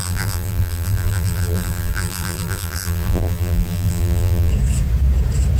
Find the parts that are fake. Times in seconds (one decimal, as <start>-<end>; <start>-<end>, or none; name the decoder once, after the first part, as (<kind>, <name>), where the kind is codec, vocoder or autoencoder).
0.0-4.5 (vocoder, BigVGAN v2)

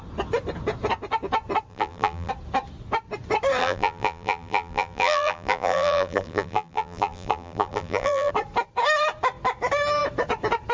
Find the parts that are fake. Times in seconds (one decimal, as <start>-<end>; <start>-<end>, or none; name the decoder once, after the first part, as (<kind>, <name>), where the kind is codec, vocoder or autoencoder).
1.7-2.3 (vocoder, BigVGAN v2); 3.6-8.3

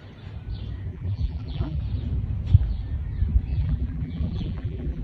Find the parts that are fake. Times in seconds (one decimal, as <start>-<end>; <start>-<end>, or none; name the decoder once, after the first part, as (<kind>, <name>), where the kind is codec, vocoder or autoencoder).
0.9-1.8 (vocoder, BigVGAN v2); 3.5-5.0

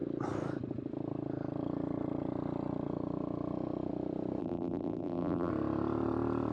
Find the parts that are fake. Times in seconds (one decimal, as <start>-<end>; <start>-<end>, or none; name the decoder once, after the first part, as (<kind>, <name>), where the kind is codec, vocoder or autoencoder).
4.4-5.5 (vocoder, BigVGAN v2)

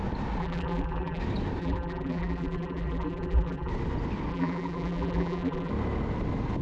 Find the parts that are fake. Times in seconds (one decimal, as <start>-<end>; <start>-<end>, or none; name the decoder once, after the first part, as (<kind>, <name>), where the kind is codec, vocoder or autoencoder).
0.4-1.2 (vocoder, BigVGAN v2); 1.6-3.7; 4.3-5.7